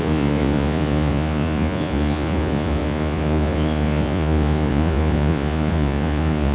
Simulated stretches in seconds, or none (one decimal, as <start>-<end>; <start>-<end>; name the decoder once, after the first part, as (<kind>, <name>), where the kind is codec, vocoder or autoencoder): 0.0-6.5 (vocoder, Vocos)